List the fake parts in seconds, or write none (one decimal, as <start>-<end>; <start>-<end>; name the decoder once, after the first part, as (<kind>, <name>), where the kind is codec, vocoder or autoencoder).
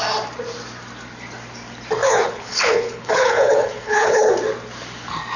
2.0-4.3 (codec, HILCodec)